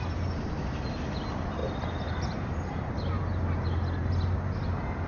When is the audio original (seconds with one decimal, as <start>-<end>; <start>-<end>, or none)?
0.0-5.1

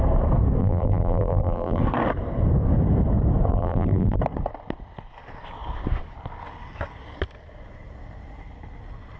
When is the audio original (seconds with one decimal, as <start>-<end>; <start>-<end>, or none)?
0.0-0.6; 1.8-3.5; 4.2-9.2